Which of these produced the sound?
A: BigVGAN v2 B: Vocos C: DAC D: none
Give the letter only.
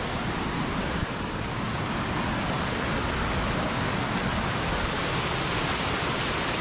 D